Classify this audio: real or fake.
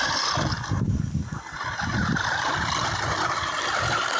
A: real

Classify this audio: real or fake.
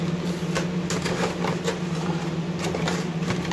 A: real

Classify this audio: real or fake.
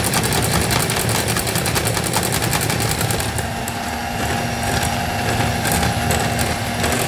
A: real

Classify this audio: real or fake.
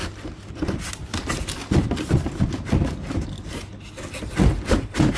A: real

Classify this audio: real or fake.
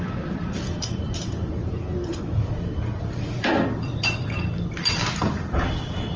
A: fake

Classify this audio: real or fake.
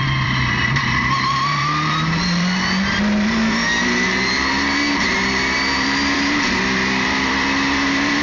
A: fake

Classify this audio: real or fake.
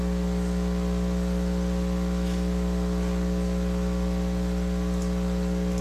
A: real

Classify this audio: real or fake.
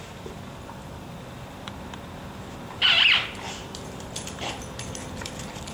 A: fake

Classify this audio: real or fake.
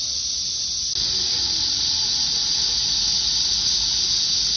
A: real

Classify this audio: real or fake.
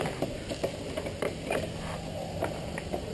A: real